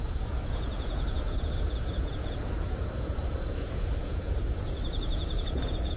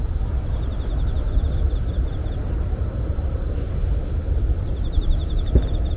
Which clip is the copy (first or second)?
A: first